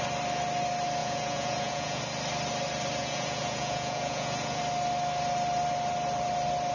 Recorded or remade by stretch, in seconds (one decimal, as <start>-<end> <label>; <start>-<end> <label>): 0.0-1.0 recorded; 1.0-2.0 remade; 2.0-3.0 recorded; 3.0-4.6 remade; 4.6-6.7 recorded